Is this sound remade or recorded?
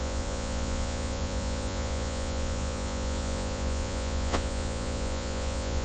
remade